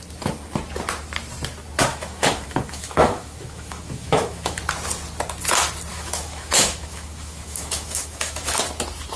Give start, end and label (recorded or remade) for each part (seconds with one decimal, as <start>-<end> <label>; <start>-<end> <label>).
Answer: 0.0-1.9 recorded; 1.9-4.6 remade; 4.6-5.9 recorded; 5.9-8.6 remade; 8.6-9.2 recorded